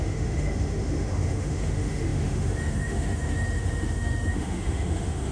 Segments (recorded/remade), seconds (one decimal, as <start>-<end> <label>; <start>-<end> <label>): 0.0-5.3 remade